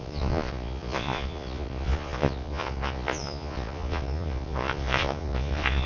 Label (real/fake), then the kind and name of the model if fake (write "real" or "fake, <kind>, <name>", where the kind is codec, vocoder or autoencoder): fake, vocoder, Vocos